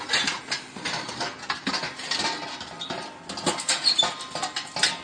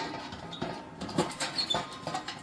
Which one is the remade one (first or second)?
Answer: second